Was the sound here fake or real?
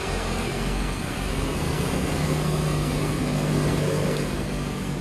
fake